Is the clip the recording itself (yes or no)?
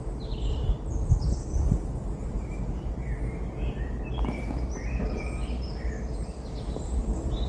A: yes